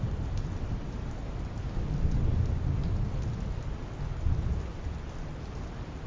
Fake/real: real